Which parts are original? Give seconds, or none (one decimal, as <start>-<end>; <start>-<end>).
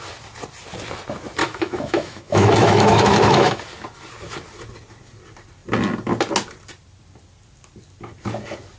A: 0.0-1.4; 3.6-8.8